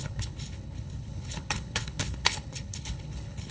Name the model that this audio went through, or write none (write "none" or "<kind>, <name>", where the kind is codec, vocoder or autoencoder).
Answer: codec, HILCodec